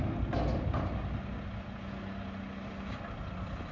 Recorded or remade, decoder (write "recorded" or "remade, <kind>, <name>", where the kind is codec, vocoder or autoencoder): recorded